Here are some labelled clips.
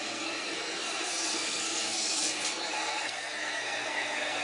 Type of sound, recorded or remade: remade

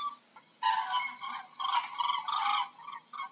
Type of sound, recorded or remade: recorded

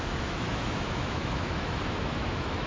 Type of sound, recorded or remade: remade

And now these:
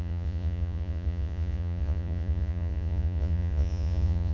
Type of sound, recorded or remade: remade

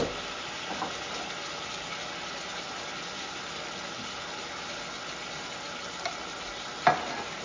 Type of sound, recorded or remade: recorded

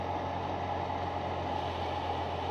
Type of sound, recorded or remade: recorded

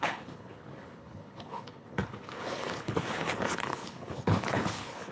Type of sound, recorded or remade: remade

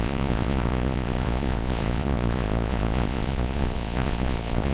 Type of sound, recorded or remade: remade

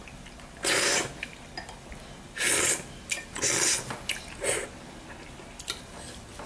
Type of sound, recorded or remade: recorded